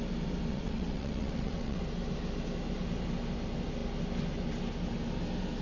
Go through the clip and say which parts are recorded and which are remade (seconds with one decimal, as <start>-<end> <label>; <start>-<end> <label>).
0.0-0.5 recorded; 0.5-1.8 remade; 1.8-5.6 recorded